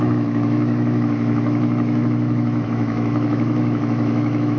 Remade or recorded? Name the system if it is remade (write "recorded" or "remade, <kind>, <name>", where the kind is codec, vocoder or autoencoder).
remade, autoencoder, DAC-VAE